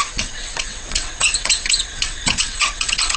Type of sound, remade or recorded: remade